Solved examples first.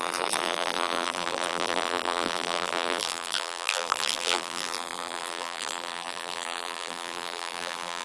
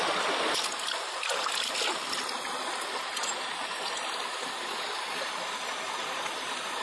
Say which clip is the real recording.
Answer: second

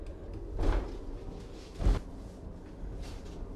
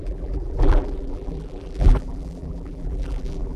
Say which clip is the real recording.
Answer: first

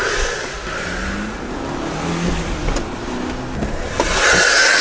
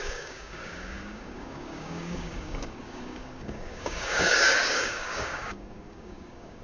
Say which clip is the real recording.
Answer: first